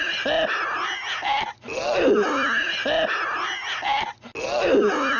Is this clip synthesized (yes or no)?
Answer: no